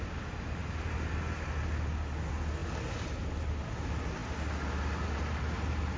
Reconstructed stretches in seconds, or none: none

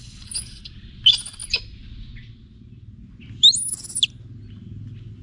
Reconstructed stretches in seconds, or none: none

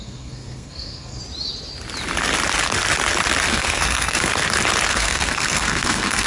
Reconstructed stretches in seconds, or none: 0.0-1.2 (codec, SNAC); 3.5-4.3; 4.9-6.3

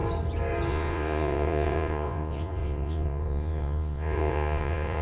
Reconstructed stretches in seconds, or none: 0.7-5.0 (vocoder, Vocos)

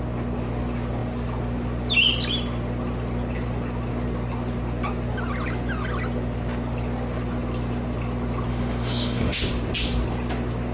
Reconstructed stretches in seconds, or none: 8.5-9.4 (autoencoder, DAC-VAE)